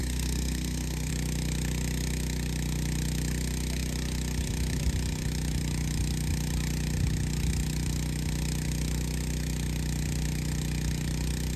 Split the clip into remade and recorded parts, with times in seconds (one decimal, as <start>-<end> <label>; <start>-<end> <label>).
0.0-1.1 remade; 1.1-11.6 recorded